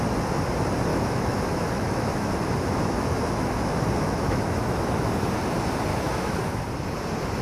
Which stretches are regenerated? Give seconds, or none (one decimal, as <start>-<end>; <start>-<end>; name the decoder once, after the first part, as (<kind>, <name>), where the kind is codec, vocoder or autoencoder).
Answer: 0.9-5.3 (autoencoder, DAC-VAE); 5.9-6.6